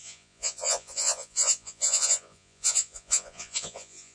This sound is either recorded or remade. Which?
remade